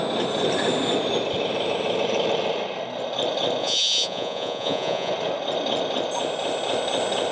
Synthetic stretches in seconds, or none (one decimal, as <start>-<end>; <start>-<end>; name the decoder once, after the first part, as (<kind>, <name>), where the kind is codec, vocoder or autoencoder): 3.6-5.1 (vocoder, Vocos)